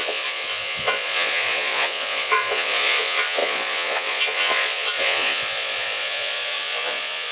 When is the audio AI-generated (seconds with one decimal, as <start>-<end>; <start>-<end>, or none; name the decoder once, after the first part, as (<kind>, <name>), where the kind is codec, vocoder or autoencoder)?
0.0-7.3 (vocoder, Vocos)

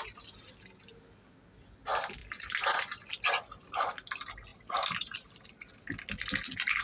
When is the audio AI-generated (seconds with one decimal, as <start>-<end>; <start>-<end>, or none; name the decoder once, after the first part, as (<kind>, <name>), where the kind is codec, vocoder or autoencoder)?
none

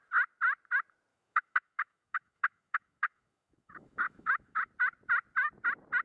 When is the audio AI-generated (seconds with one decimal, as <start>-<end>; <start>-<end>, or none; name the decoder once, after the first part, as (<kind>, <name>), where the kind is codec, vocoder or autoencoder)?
1.1-4.7 (autoencoder, DAC-VAE)

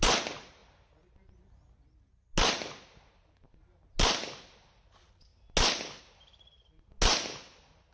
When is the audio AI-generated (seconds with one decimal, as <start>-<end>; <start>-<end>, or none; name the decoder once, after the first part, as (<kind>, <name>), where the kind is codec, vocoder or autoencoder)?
none

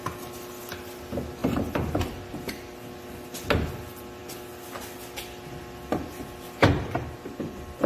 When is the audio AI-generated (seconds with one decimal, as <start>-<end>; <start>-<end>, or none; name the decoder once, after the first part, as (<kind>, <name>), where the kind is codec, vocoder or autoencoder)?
none